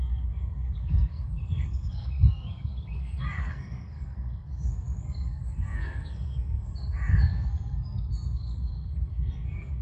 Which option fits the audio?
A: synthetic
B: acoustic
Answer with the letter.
A